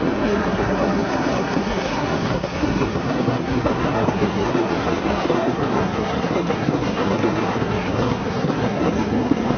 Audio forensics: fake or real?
fake